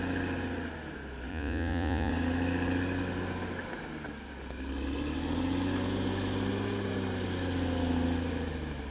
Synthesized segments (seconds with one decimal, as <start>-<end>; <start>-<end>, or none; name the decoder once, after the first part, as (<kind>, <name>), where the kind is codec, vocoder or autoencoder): 1.3-2.1 (vocoder, Vocos)

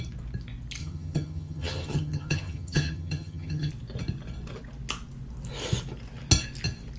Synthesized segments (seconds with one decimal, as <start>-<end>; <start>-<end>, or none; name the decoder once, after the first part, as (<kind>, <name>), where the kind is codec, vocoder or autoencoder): 0.8-3.7 (vocoder, HiFi-GAN)

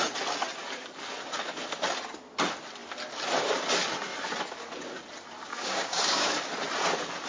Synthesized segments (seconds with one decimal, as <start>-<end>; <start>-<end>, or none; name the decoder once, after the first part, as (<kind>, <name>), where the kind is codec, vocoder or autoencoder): 5.5-6.3 (codec, DAC)

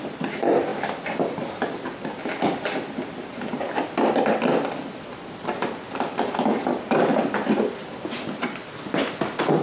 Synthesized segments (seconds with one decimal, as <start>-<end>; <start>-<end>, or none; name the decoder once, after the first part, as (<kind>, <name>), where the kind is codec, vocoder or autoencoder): none

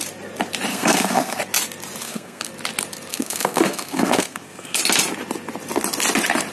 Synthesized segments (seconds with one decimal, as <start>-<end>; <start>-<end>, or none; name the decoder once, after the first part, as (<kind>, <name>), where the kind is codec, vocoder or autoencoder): 0.7-1.4 (codec, SNAC); 2.0-2.5; 3.1-4.8

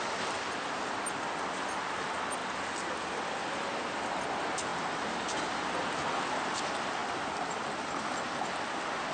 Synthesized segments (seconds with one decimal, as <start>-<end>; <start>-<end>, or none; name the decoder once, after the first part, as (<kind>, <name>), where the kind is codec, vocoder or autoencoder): none

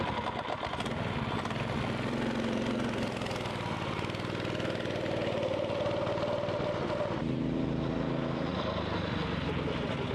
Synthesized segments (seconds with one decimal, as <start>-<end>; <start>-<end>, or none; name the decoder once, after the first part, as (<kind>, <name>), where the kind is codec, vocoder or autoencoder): none